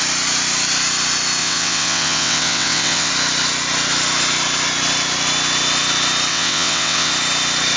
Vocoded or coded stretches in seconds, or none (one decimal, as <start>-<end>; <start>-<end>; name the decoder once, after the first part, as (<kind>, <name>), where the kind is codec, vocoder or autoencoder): 1.4-3.1 (vocoder, WaveNeXt); 6.3-7.1